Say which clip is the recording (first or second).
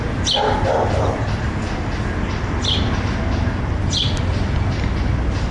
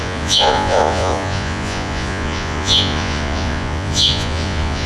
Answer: first